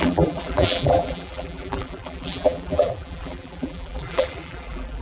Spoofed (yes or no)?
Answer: yes